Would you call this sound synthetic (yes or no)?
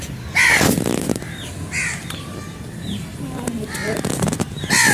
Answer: no